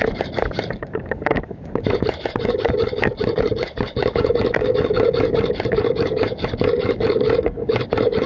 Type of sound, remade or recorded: remade